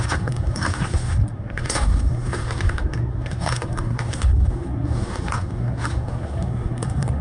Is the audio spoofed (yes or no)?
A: yes